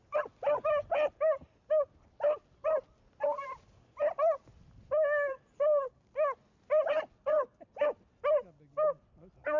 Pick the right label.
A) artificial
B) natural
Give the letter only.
B